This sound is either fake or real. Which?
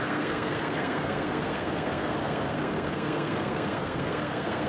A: fake